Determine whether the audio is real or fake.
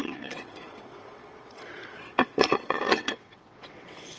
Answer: fake